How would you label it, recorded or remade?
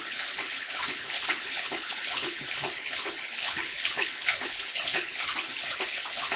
remade